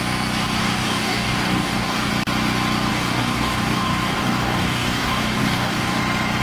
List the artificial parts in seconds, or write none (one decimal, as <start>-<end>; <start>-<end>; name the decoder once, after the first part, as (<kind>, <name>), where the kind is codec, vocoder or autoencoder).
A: 0.6-2.1 (codec, DAC); 2.9-6.0